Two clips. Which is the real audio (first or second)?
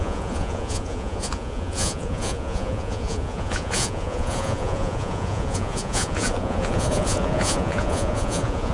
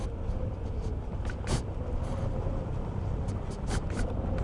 second